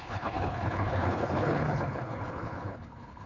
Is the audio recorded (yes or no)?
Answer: no